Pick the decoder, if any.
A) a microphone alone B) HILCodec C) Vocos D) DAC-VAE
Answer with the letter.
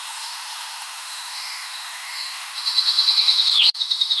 D